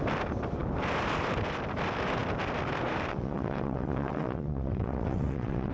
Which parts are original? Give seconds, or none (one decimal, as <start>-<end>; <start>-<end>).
0.0-3.1